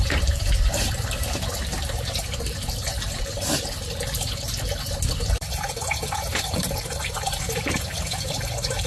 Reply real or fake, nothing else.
fake